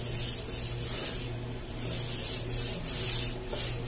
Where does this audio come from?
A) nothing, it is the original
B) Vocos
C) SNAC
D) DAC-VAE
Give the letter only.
A